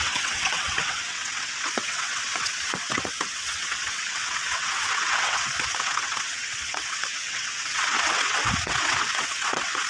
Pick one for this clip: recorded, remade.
remade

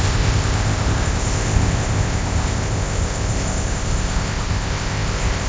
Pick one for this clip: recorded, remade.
remade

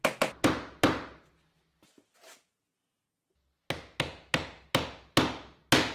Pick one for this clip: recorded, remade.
recorded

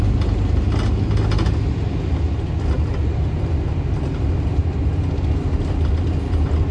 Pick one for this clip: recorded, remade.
recorded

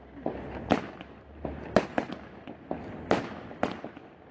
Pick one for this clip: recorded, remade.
recorded